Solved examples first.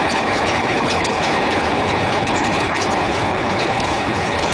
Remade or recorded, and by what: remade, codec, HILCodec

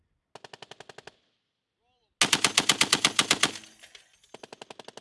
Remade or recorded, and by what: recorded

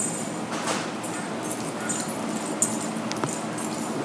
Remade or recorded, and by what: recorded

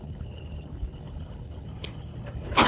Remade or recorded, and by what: remade, codec, HILCodec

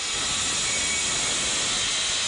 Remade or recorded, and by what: recorded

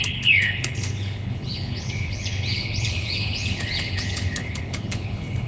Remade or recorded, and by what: remade, codec, HILCodec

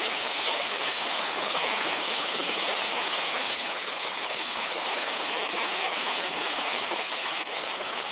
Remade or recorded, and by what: remade, codec, HILCodec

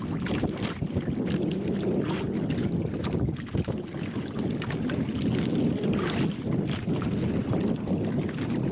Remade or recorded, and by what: recorded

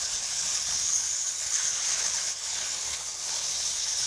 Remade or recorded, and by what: remade, codec, HILCodec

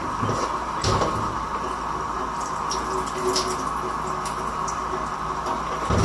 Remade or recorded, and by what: recorded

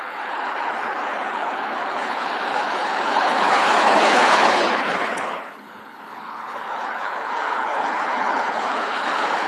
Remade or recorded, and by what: remade, codec, HILCodec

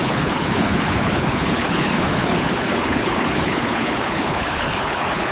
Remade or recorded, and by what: remade, codec, HILCodec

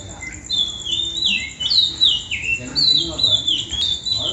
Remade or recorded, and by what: recorded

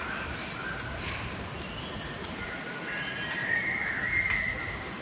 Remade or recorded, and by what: recorded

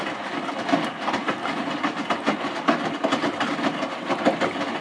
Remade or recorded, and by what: recorded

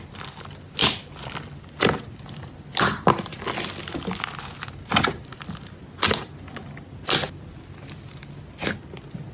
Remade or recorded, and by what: recorded